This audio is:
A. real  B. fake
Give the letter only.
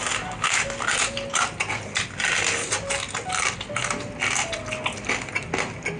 A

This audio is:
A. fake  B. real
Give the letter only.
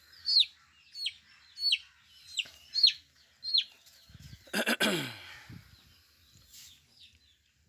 B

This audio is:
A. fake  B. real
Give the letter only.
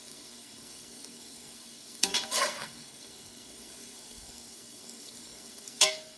A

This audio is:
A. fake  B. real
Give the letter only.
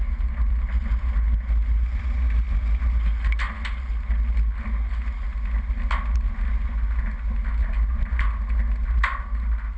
B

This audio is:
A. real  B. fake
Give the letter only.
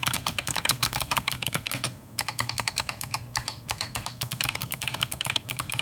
B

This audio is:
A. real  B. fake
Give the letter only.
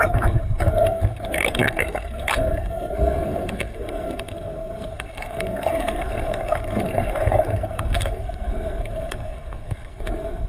B